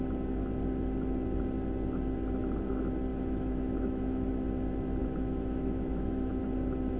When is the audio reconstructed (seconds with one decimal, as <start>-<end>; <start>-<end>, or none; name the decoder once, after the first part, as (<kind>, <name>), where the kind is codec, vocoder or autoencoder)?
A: 3.1-4.3 (autoencoder, DAC-VAE); 5.0-6.4